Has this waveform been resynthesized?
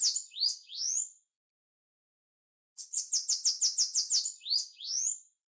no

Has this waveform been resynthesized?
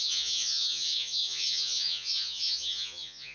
yes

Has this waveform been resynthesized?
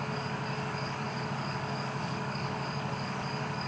yes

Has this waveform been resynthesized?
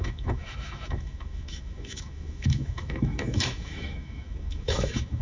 yes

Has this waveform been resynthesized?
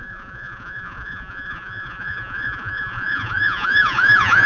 yes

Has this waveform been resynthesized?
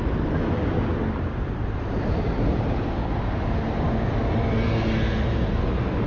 no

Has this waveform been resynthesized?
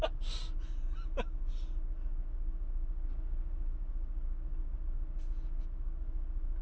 no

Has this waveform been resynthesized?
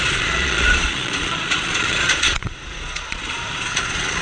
yes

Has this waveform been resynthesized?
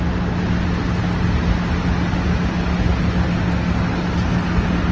no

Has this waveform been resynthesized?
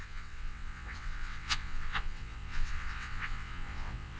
yes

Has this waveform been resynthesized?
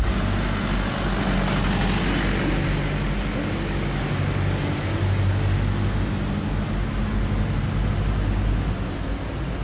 no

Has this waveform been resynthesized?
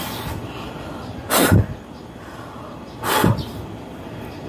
no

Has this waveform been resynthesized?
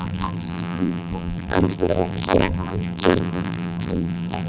yes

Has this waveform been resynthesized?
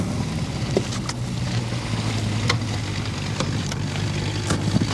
no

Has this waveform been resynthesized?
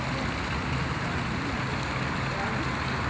no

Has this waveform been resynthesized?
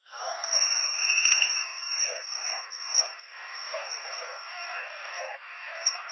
yes